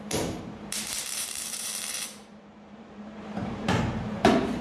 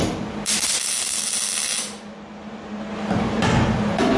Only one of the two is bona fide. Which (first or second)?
second